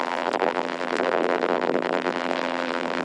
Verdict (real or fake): fake